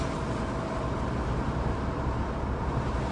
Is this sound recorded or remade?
recorded